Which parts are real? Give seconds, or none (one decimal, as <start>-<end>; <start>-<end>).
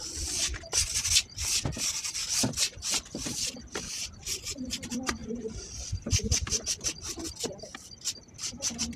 0.0-9.0